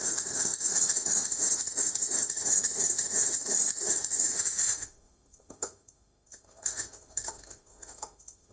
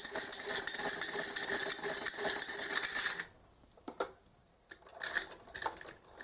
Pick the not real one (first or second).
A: first